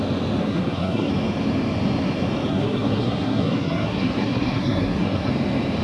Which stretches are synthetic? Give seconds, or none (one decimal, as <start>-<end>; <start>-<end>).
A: 0.4-1.1; 2.5-5.3